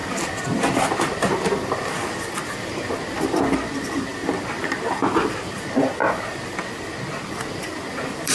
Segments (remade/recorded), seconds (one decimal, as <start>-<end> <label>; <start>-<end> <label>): 0.0-6.0 remade; 6.0-7.5 recorded; 7.5-8.3 remade